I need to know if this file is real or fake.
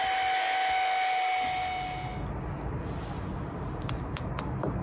real